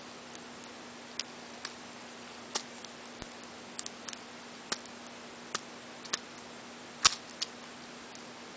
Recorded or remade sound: recorded